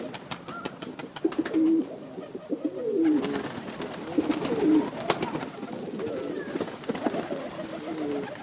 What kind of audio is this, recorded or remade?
recorded